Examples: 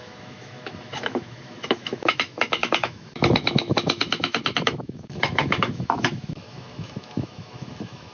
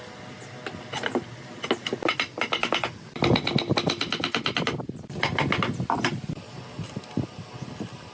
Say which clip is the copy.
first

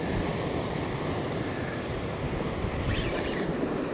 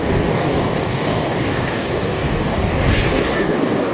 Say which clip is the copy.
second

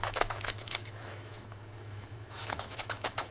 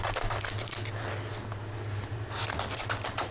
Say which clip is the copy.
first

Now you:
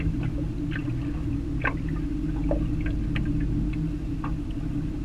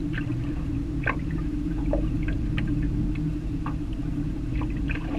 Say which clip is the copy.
second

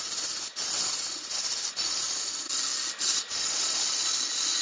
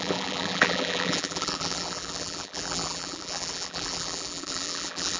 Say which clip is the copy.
second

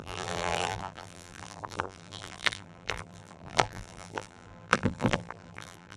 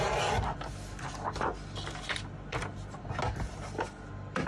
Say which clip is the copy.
first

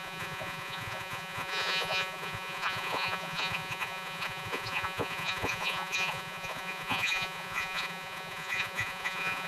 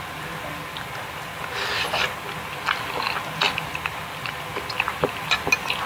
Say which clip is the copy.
first